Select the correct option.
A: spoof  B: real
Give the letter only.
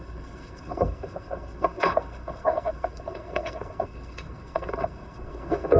A